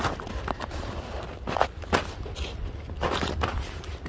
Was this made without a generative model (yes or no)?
yes